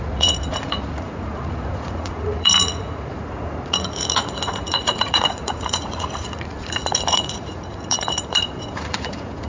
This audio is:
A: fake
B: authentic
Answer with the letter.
A